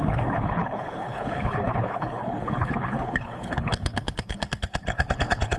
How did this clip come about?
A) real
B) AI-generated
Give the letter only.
B